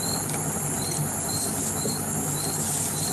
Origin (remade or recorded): recorded